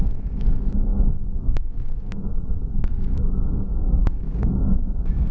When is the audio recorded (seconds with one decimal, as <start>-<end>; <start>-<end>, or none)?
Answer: none